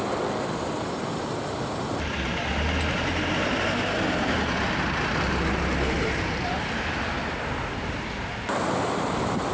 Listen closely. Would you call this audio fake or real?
real